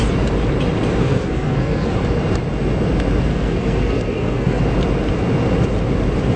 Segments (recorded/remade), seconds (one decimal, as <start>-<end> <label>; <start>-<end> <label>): 0.0-1.0 recorded; 1.0-1.9 remade; 1.9-3.3 recorded; 3.3-4.6 remade; 4.6-6.4 recorded